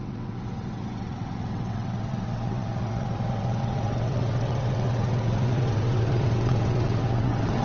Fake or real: fake